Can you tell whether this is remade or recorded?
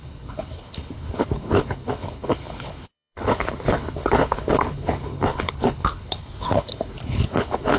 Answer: remade